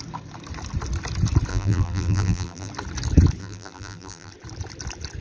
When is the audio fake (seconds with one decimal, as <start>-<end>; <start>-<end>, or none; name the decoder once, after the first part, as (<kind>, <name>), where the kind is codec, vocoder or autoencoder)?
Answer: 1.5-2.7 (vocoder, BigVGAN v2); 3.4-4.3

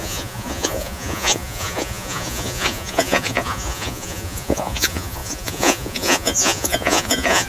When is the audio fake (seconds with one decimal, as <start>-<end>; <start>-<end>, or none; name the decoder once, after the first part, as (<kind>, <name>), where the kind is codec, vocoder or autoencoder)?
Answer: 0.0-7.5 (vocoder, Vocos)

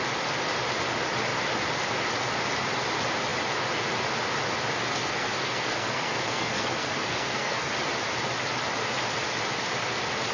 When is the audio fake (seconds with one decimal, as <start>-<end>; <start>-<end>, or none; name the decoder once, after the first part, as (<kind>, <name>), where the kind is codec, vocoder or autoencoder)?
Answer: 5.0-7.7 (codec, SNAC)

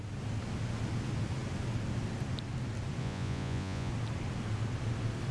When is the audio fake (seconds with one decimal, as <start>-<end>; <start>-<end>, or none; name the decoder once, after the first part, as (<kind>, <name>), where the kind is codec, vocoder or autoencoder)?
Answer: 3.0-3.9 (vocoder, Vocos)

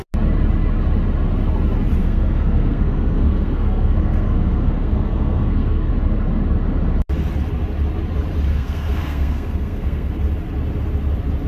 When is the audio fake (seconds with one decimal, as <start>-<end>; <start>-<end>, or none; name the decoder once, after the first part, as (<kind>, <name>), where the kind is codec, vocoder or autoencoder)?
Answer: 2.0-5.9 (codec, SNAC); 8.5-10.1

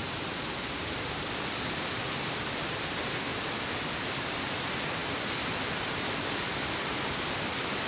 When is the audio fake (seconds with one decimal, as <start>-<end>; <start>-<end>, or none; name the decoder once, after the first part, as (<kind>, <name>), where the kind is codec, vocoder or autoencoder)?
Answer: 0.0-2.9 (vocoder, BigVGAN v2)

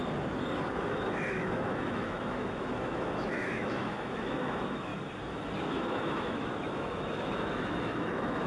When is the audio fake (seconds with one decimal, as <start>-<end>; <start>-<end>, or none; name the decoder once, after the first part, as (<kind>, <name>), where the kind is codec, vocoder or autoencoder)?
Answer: 0.7-4.9 (autoencoder, DAC-VAE); 5.6-8.5